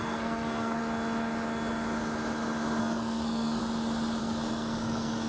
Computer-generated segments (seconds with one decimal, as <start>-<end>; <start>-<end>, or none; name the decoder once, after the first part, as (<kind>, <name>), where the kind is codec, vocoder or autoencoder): 0.0-0.8 (codec, SNAC); 2.8-3.6; 4.2-5.3

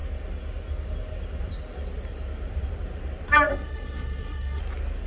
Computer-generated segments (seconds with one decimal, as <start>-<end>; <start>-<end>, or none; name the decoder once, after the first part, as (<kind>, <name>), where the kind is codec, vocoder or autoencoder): 3.5-4.6 (codec, SNAC)